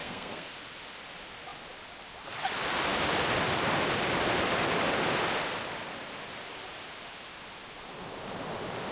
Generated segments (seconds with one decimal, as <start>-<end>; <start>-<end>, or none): 0.0-0.5

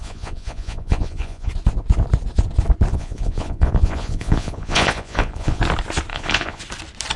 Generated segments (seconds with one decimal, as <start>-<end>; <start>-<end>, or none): 0.0-1.5; 2.9-5.6; 6.1-6.6

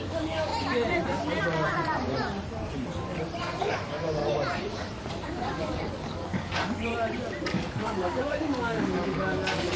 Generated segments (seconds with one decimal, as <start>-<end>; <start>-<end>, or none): 0.0-0.5; 3.7-4.2; 5.1-6.9; 7.7-9.8

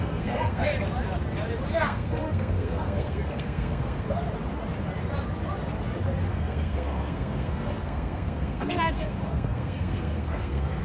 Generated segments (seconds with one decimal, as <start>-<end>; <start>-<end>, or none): 0.0-0.7; 1.7-4.2; 6.3-10.8

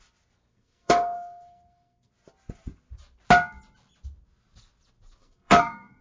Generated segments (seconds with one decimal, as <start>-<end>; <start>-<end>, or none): 0.5-2.1; 5.2-6.0

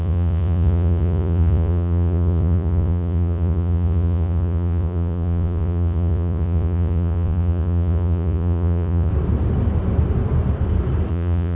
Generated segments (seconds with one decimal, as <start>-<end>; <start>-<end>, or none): 0.0-9.1; 11.1-11.6

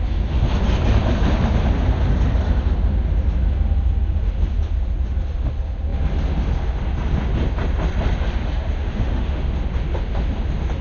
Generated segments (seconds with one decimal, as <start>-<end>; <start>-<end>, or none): 8.8-9.4